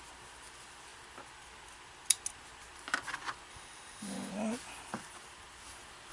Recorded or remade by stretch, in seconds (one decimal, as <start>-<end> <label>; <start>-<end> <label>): 0.0-3.5 recorded; 3.5-4.3 remade; 4.3-6.1 recorded